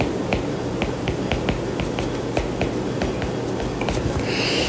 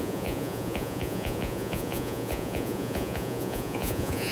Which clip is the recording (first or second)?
first